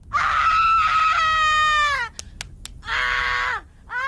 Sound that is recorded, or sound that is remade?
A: recorded